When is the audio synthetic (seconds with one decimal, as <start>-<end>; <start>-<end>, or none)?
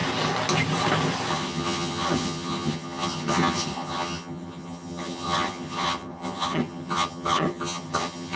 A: 1.3-8.4